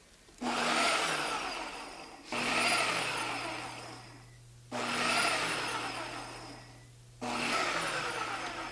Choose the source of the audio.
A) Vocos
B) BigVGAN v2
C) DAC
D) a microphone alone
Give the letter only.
D